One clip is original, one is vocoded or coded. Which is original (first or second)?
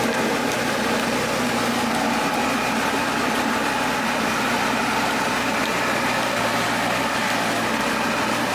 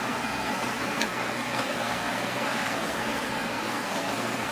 first